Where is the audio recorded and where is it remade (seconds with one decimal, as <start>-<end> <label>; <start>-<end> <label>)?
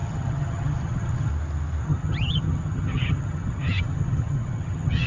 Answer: 0.0-1.3 remade; 1.3-1.8 recorded; 1.8-5.1 remade